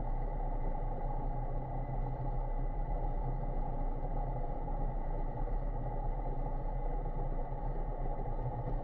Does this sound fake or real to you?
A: fake